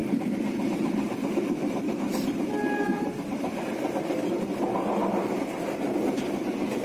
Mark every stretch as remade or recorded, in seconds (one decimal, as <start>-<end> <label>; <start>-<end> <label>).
0.0-6.8 recorded